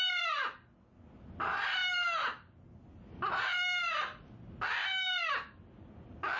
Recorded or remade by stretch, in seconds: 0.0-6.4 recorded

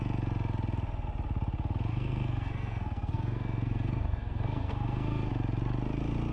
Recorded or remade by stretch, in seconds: 0.0-1.9 recorded; 1.9-5.3 remade; 5.3-6.3 recorded

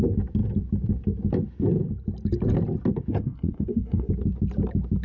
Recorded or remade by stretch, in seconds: 0.0-3.1 recorded; 3.1-4.1 remade; 4.1-5.0 recorded

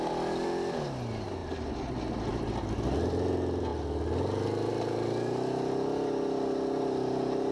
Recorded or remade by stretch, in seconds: 0.0-7.5 recorded

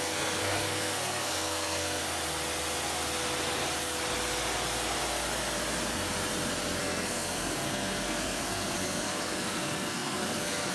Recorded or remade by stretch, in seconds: 0.0-2.0 remade; 2.0-6.8 recorded; 6.8-10.7 remade